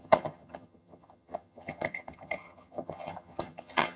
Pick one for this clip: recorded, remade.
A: remade